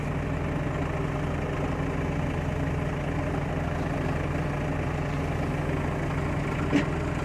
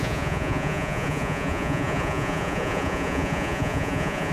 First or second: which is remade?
second